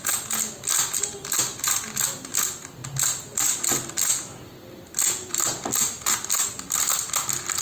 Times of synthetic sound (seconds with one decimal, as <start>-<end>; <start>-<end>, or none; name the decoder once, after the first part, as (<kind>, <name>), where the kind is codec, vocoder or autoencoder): none